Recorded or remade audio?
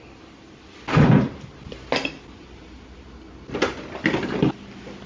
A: recorded